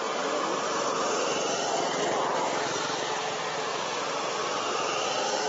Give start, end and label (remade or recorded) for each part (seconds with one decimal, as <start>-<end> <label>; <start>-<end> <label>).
0.0-5.5 recorded